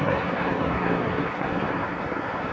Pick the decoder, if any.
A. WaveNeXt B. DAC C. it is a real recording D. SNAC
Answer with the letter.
D